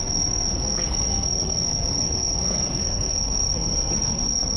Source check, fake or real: fake